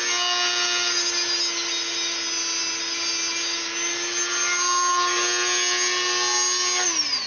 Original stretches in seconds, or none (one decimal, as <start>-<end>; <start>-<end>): 0.0-7.3